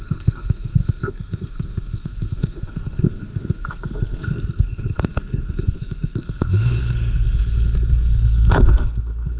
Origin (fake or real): fake